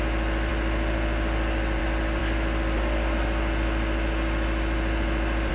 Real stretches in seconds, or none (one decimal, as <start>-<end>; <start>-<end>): 0.0-5.5